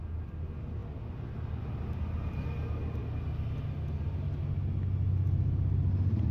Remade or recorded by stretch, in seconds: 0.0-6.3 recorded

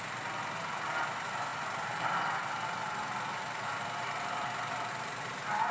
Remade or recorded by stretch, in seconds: 0.0-1.5 recorded; 1.5-4.9 remade; 4.9-5.7 recorded

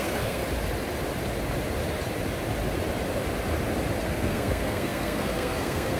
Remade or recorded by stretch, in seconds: 0.0-0.4 remade; 0.4-4.0 recorded; 4.0-6.0 remade

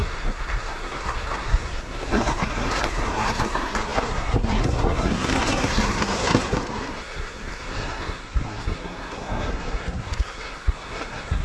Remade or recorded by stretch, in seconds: 0.0-11.4 remade

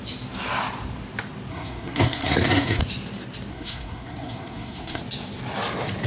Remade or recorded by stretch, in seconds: 0.0-1.5 recorded; 1.5-2.8 remade; 2.8-3.5 recorded; 3.5-5.0 remade; 5.0-6.1 recorded

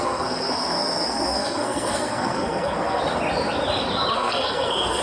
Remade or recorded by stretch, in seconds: 0.0-3.0 remade; 3.0-4.1 recorded; 4.1-5.0 remade